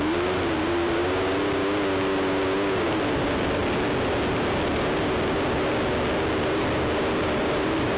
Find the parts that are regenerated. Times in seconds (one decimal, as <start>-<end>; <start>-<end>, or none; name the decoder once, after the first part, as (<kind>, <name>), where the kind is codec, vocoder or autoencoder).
0.0-1.0 (vocoder, BigVGAN v2); 3.0-3.6; 7.5-8.0